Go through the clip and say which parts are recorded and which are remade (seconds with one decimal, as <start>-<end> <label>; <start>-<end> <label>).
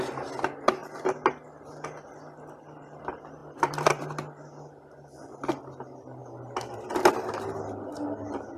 0.0-3.4 recorded; 3.4-4.0 remade; 4.0-6.2 recorded; 6.2-6.9 remade; 6.9-8.6 recorded